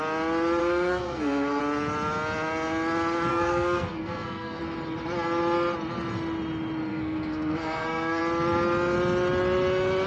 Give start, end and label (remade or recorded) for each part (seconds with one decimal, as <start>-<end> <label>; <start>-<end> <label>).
0.0-0.6 recorded; 0.6-1.6 remade; 1.6-3.3 recorded; 3.3-4.6 remade; 4.6-6.9 recorded; 6.9-8.2 remade; 8.2-10.1 recorded